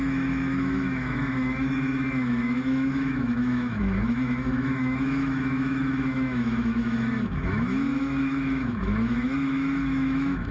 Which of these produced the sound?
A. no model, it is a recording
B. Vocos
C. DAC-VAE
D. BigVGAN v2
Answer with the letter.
C